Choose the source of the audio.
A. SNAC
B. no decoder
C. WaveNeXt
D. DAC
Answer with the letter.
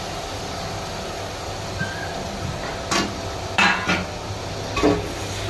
B